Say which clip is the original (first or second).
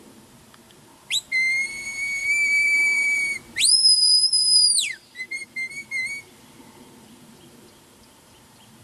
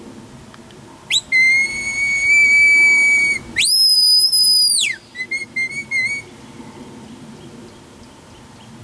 second